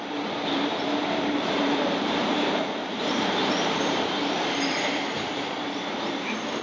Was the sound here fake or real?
fake